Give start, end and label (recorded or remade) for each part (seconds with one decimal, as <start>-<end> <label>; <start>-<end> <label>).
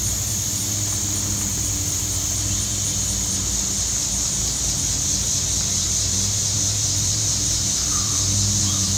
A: 0.0-2.7 remade; 2.7-5.7 recorded; 5.7-9.0 remade